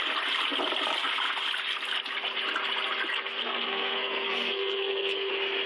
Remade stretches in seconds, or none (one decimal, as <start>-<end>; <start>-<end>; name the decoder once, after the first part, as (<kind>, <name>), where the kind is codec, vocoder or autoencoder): 3.1-5.3 (codec, SNAC)